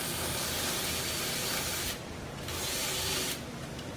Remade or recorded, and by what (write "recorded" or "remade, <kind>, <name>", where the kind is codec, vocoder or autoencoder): recorded